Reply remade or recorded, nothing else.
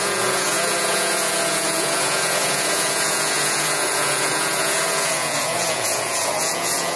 remade